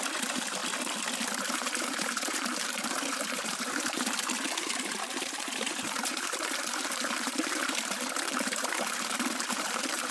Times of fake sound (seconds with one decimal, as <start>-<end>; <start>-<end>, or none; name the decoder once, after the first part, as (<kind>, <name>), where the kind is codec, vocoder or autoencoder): 0.0-0.6 (vocoder, BigVGAN v2); 1.4-10.1